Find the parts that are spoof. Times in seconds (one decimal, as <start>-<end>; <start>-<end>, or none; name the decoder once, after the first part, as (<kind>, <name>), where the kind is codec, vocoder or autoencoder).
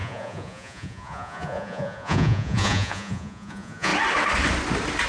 0.0-3.9 (vocoder, Vocos)